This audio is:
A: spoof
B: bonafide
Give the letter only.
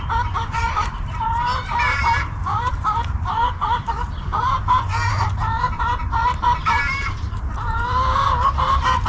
A